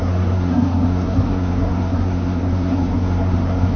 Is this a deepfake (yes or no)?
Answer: yes